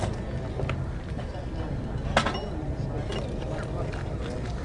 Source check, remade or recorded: recorded